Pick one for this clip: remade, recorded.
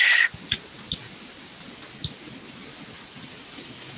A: recorded